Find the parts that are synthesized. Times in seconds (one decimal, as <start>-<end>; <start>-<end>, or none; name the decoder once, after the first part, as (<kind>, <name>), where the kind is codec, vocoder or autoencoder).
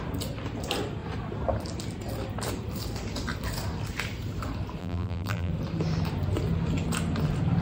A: 4.8-5.5 (vocoder, BigVGAN v2)